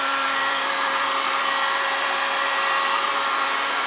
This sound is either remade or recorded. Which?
remade